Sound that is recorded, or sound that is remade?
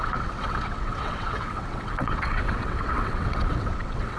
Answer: remade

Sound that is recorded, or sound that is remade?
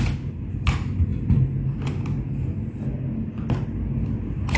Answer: recorded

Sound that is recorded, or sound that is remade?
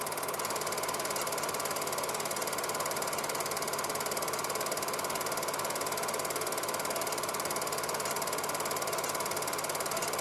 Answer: recorded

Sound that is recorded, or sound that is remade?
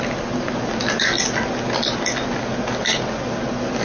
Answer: recorded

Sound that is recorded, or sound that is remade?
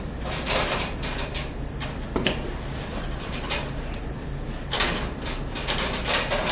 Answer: remade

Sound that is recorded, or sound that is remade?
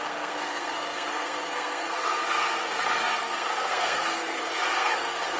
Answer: remade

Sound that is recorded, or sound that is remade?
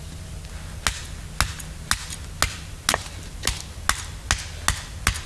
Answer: recorded